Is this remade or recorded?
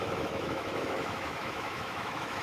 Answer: remade